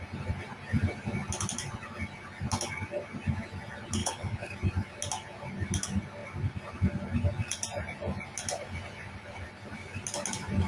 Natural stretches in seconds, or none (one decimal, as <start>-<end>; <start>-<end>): 0.0-4.0; 4.5-10.7

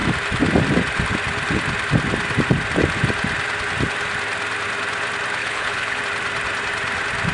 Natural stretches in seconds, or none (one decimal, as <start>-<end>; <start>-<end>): 0.0-5.4; 6.0-7.3